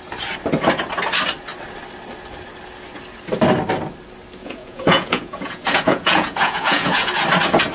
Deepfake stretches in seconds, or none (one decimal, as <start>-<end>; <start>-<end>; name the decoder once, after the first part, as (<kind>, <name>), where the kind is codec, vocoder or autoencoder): 4.4-7.1 (vocoder, Vocos)